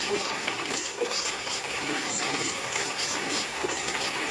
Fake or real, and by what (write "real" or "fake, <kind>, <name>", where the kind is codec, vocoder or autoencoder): fake, codec, SNAC